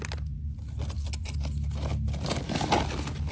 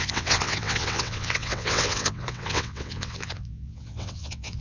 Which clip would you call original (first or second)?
first